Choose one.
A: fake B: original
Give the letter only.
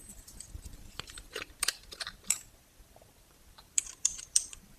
A